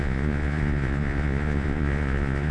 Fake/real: fake